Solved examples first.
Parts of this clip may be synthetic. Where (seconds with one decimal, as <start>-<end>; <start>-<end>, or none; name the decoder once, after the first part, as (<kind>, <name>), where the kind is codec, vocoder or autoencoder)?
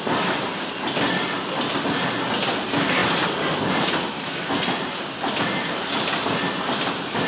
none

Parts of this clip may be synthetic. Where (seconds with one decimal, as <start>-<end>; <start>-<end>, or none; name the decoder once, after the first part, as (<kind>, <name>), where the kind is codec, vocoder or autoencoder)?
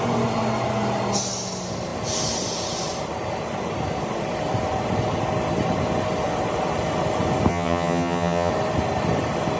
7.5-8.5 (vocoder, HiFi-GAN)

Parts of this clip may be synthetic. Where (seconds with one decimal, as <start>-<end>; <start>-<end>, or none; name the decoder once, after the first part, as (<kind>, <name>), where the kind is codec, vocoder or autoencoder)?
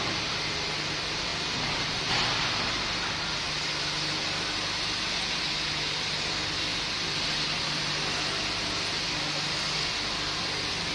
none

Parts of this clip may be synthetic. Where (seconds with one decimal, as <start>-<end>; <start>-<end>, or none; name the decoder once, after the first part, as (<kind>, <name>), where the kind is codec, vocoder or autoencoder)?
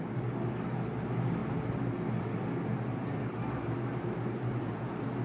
none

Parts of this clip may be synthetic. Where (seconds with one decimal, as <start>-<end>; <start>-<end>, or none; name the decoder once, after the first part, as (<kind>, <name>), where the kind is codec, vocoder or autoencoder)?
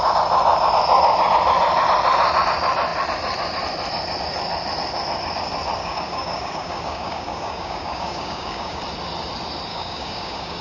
5.8-8.8 (codec, DAC); 9.7-10.6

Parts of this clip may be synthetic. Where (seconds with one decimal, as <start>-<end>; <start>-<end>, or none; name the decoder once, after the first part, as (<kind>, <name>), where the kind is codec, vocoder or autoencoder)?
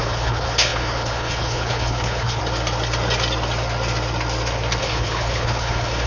0.0-2.4 (codec, HILCodec); 4.8-6.1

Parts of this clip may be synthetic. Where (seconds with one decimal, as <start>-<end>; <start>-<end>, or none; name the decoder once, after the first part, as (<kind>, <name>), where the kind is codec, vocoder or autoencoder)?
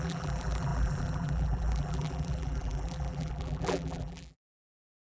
0.0-5.0 (vocoder, BigVGAN v2)